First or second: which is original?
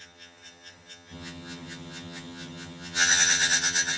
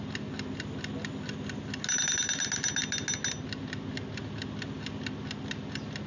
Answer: second